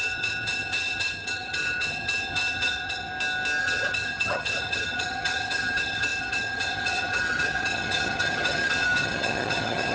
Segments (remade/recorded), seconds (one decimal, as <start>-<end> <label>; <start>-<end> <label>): 0.0-3.1 remade; 3.1-3.6 recorded; 3.6-9.9 remade